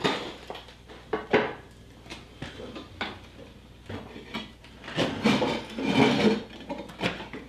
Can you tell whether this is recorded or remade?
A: recorded